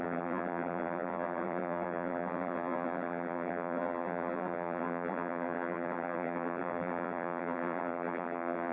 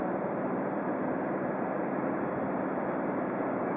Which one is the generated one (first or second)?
first